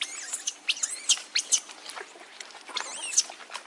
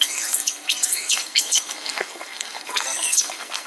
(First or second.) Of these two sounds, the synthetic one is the second